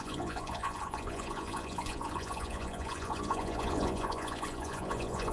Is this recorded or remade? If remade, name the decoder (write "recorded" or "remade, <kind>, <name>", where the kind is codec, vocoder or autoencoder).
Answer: remade, vocoder, Vocos